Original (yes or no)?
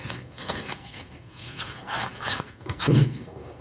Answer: no